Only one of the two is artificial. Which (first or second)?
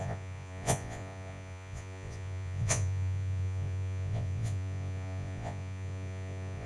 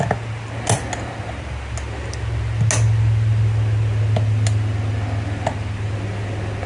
first